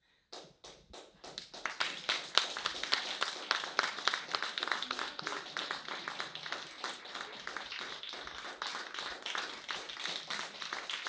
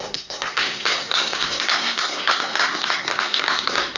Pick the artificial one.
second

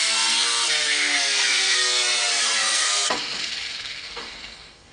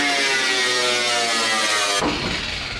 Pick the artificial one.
first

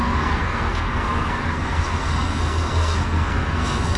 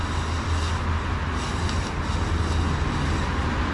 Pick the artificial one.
first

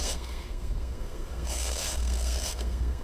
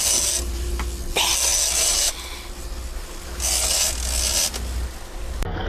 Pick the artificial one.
first